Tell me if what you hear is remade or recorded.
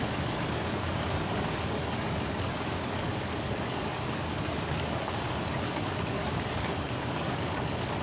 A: remade